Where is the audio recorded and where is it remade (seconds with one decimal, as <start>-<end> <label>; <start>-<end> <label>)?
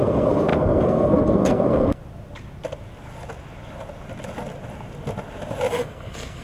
0.0-2.0 remade; 2.0-5.7 recorded; 5.7-6.4 remade